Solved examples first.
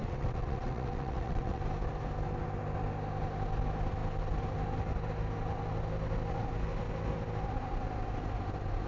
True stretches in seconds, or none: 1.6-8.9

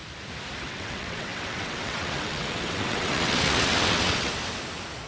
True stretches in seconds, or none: 0.0-0.6; 4.3-5.1

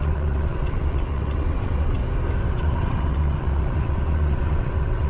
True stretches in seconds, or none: 2.0-2.5

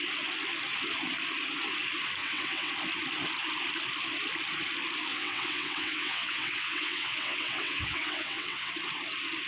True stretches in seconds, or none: 0.0-2.2; 2.7-5.1; 8.7-9.5

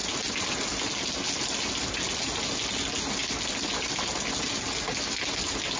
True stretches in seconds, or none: 0.0-5.8